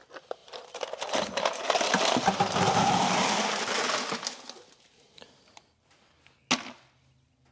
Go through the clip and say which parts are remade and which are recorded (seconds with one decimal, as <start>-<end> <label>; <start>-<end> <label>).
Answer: 0.0-0.4 recorded; 0.4-4.0 remade; 4.0-7.5 recorded